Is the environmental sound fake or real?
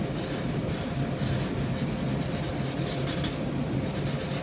real